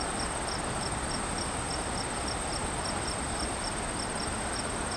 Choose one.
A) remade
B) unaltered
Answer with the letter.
B